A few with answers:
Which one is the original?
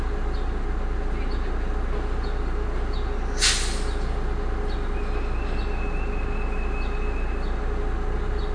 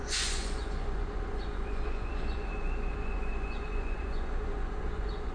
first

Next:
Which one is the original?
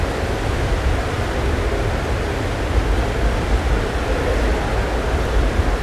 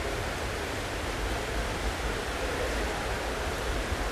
first